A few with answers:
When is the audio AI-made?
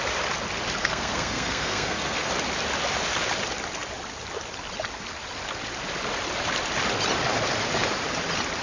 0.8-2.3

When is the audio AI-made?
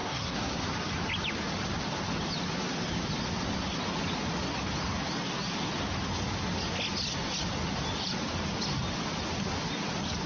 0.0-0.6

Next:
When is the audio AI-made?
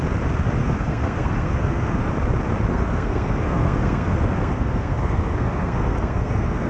0.6-2.1; 2.7-6.7